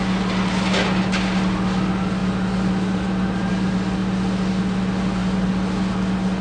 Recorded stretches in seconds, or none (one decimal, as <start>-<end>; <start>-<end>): 0.0-6.4